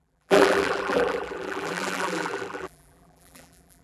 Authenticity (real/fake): fake